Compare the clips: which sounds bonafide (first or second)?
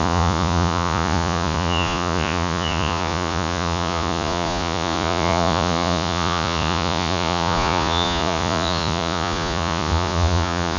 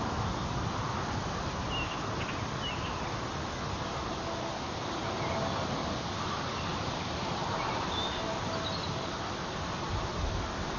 second